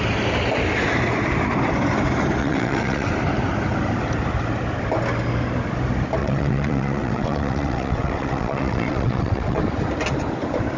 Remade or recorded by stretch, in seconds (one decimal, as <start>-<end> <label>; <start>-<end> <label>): 0.0-2.4 recorded; 2.4-3.1 remade; 3.1-6.2 recorded; 6.2-9.6 remade; 9.6-10.8 recorded